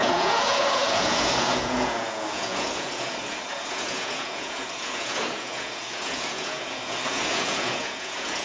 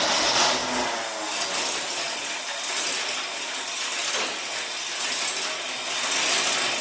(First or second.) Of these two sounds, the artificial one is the first